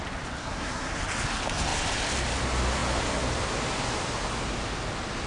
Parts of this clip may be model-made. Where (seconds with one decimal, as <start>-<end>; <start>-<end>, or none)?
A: 0.4-1.0